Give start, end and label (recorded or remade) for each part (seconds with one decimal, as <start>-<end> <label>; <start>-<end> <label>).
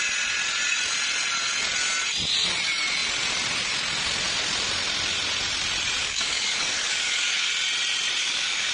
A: 0.0-6.0 recorded; 6.0-7.5 remade; 7.5-8.2 recorded; 8.2-8.7 remade